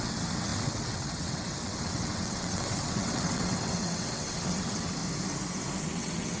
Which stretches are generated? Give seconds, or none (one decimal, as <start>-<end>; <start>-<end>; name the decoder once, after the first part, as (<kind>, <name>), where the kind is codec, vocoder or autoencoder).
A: 0.0-5.0 (vocoder, WaveNeXt); 5.8-6.4